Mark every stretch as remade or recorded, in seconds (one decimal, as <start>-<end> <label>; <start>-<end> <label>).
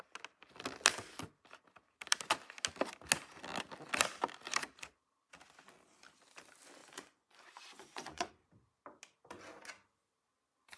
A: 0.0-6.8 recorded; 6.8-8.3 remade; 8.3-10.8 recorded